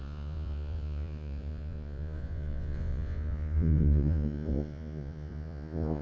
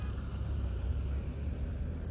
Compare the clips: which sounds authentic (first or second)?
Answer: second